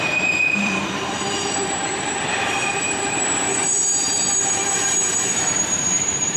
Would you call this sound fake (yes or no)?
yes